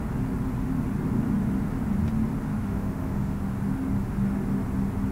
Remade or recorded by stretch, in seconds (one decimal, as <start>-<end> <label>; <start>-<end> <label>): 0.0-2.5 recorded; 2.5-3.4 remade; 3.4-5.1 recorded